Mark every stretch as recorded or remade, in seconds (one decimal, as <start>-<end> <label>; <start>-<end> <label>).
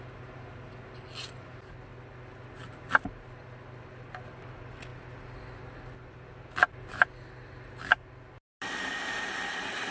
0.0-9.9 recorded